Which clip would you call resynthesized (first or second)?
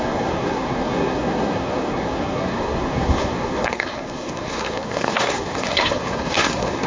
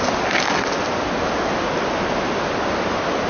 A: first